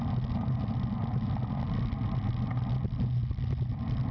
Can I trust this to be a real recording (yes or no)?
yes